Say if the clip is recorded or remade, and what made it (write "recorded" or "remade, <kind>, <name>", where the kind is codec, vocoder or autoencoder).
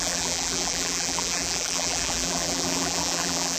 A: remade, vocoder, BigVGAN v2